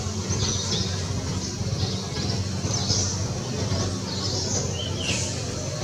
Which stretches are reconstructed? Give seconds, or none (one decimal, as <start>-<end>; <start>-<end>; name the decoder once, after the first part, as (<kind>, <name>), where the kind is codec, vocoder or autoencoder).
none